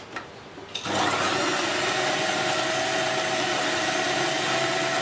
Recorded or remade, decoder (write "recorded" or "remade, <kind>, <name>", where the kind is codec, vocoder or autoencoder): recorded